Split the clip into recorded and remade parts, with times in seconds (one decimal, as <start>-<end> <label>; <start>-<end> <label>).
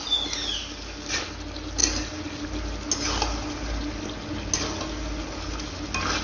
0.0-6.2 recorded